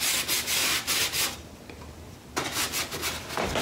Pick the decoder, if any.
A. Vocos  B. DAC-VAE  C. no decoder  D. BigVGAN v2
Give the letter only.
C